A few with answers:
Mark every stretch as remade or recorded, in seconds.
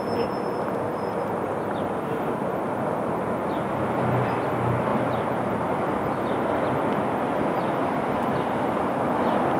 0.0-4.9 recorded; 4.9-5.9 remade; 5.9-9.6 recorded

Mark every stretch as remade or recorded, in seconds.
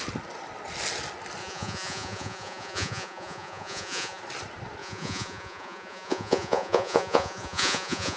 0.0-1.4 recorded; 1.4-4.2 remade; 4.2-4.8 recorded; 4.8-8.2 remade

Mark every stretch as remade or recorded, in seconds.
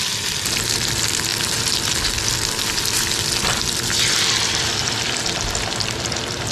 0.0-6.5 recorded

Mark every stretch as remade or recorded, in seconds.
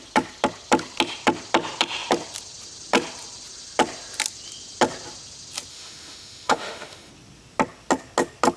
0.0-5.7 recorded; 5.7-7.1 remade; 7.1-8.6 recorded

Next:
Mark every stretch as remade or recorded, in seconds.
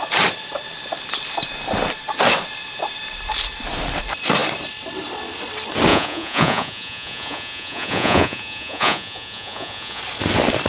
0.0-5.9 recorded; 5.9-10.0 remade; 10.0-10.7 recorded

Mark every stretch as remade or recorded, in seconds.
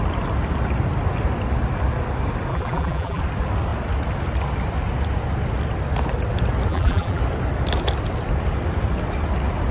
0.0-2.5 recorded; 2.5-3.2 remade; 3.2-6.7 recorded; 6.7-7.2 remade; 7.2-9.7 recorded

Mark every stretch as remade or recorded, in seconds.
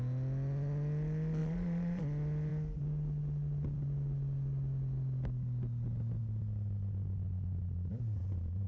0.0-1.4 recorded; 1.4-2.0 remade; 2.0-8.2 recorded; 8.2-8.7 remade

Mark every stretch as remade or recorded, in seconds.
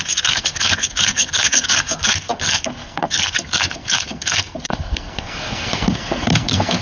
0.0-6.8 remade